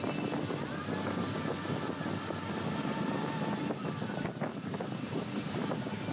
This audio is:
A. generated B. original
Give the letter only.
B